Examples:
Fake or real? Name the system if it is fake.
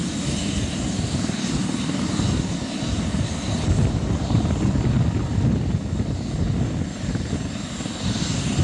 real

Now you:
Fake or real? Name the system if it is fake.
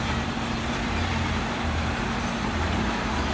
fake, vocoder, BigVGAN v2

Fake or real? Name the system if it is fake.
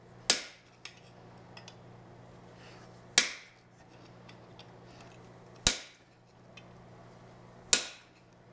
real